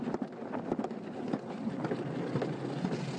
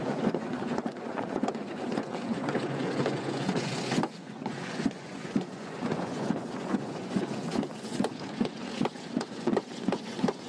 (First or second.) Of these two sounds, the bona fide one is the first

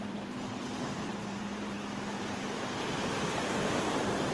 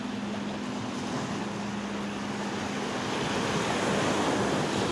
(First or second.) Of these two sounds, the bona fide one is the second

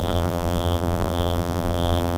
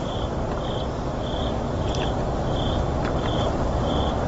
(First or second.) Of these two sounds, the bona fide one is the second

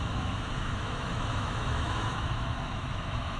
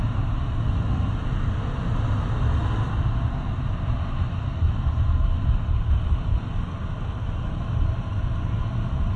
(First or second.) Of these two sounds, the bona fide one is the second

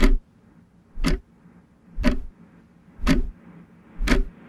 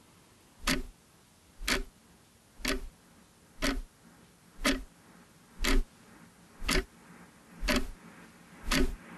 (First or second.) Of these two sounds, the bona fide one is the second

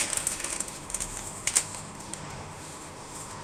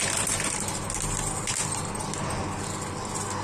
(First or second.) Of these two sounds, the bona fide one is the second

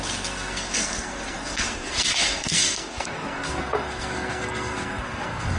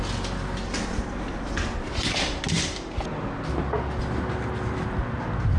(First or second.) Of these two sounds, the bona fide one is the second